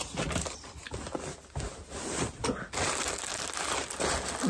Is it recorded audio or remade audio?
recorded